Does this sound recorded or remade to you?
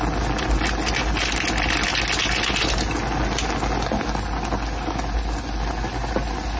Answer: recorded